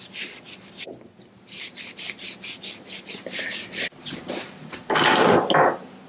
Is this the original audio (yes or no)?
yes